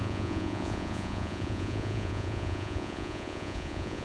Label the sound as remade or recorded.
remade